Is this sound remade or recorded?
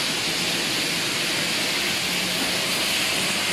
recorded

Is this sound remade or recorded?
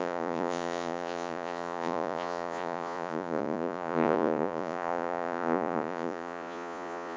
remade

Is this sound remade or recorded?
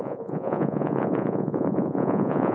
remade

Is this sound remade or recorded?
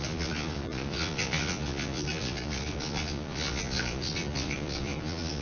remade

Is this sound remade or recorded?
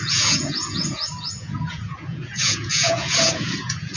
remade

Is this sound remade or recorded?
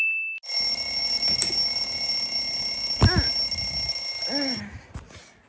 recorded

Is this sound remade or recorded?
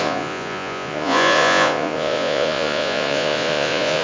remade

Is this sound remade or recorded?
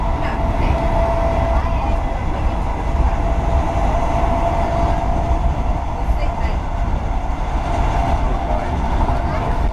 recorded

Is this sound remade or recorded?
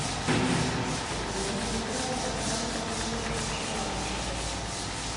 recorded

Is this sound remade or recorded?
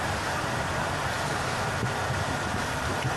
recorded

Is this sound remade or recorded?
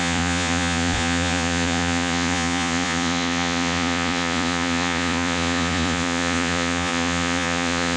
remade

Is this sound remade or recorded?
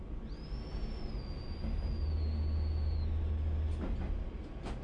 recorded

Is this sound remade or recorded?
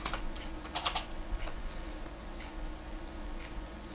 remade